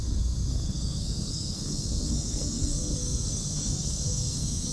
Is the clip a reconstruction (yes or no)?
yes